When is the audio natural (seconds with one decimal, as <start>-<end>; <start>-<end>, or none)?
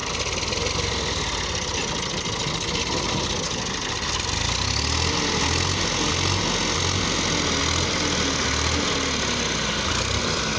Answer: 0.0-10.6